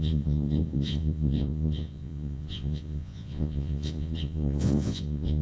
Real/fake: fake